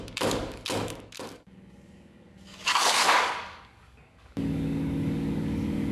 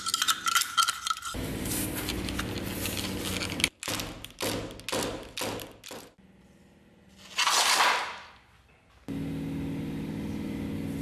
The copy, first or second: first